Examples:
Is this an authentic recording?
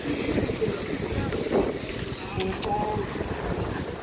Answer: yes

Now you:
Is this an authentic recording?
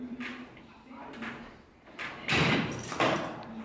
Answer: no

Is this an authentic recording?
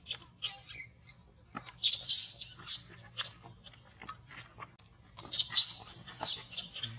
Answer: yes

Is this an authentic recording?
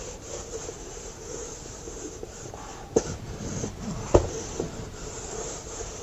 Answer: no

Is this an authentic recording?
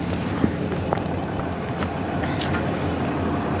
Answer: yes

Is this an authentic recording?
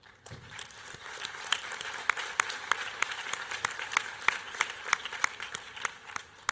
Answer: no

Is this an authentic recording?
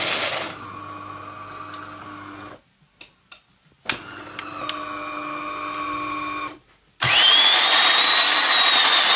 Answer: yes